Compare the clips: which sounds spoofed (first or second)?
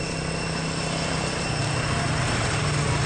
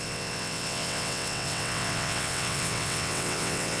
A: second